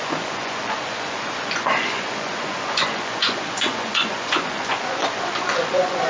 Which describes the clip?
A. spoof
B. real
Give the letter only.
A